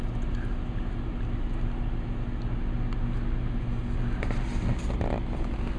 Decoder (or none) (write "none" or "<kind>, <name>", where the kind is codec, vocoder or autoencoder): none